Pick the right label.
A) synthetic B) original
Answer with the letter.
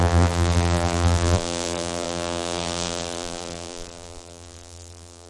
A